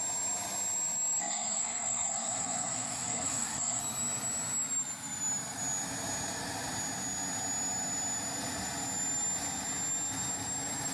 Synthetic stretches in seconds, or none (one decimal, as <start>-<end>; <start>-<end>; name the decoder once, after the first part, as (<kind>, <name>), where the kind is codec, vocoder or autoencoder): 1.2-3.8 (codec, SNAC)